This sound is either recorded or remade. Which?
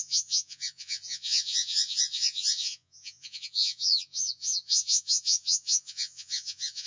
remade